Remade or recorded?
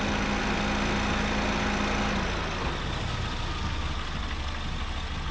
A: recorded